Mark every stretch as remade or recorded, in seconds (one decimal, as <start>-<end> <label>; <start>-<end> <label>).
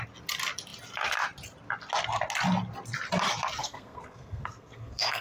0.0-3.6 recorded; 3.6-5.2 remade